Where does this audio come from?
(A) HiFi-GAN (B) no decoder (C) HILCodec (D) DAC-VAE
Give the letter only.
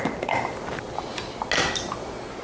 B